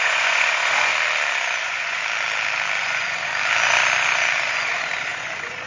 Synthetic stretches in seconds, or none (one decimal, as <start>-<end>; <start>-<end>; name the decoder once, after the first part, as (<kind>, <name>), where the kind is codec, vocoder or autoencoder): 0.0-0.9 (vocoder, Vocos); 1.6-2.0; 2.8-3.3; 4.5-5.7